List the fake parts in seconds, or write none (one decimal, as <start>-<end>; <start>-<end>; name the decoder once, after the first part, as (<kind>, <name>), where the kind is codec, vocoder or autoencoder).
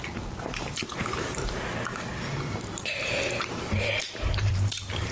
0.0-2.1 (vocoder, BigVGAN v2); 2.8-5.1